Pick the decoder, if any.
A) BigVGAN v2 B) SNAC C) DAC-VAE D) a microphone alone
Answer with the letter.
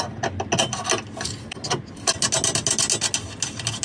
D